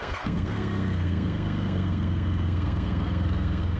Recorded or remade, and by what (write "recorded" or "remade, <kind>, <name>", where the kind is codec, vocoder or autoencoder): remade, codec, SNAC